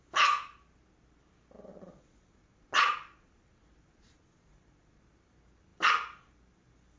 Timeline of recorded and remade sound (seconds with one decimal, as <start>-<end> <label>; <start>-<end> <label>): 0.0-1.7 recorded; 1.7-5.0 remade; 5.0-7.0 recorded